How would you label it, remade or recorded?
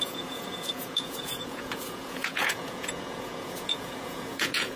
remade